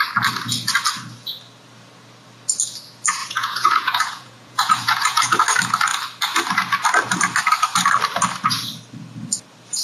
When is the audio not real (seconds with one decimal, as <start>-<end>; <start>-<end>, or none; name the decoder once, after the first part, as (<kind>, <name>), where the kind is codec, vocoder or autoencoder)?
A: 3.2-5.4 (vocoder, Vocos)